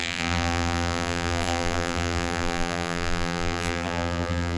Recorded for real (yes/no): no